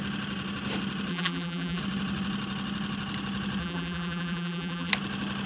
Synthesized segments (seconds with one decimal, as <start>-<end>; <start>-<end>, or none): 1.1-1.8; 3.6-4.9